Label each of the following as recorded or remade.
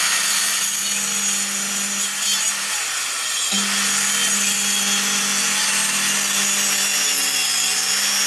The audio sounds recorded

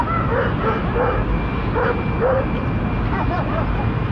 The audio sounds recorded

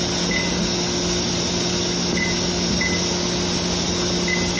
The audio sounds recorded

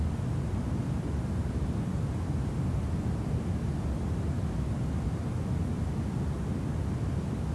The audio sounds recorded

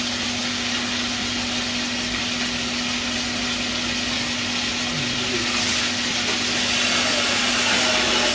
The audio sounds recorded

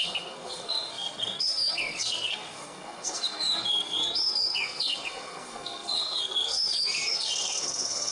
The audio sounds remade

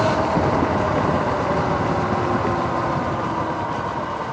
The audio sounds recorded